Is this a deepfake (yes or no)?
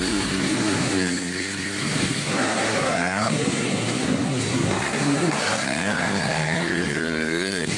yes